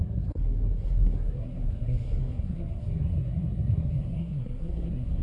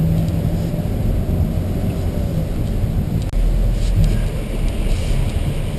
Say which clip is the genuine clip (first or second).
second